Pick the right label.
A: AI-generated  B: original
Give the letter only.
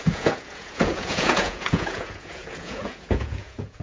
A